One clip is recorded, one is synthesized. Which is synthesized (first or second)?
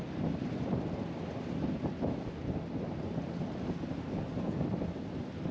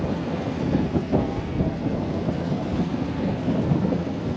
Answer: second